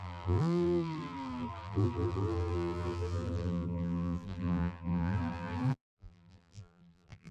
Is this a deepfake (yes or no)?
yes